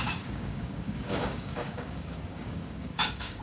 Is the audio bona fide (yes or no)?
no